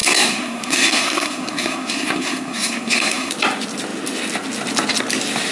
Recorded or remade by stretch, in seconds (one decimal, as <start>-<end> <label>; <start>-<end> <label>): 0.0-3.3 remade; 3.3-5.5 recorded